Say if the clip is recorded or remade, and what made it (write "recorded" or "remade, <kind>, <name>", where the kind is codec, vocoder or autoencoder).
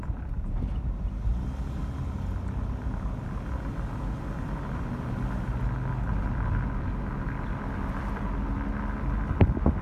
recorded